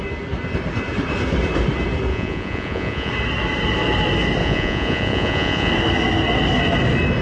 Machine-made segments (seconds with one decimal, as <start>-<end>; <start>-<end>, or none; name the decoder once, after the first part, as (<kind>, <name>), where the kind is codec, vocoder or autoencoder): 2.1-3.1 (vocoder, Vocos); 4.4-5.7